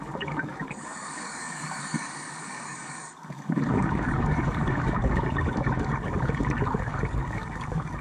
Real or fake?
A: fake